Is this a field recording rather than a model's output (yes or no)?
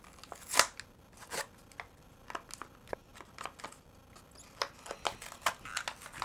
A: yes